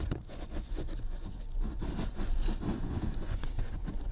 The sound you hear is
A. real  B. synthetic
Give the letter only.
B